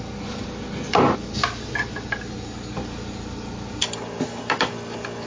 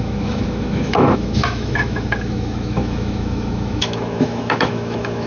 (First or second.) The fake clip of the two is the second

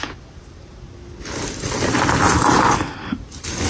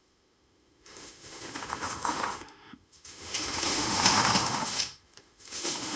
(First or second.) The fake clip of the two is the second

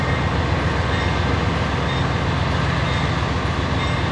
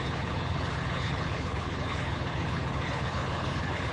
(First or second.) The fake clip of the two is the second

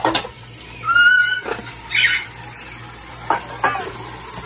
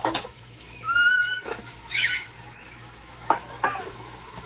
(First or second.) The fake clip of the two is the second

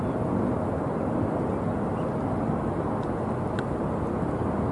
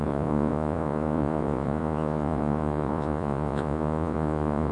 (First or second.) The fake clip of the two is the second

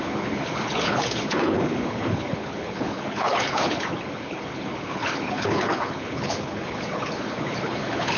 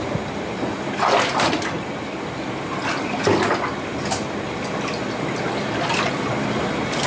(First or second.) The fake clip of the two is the first